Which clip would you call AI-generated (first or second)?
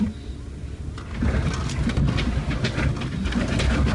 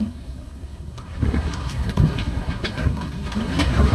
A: second